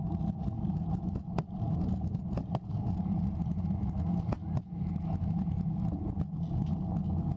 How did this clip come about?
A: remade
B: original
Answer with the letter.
B